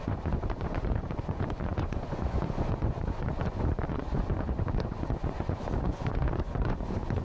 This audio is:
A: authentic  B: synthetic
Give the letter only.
B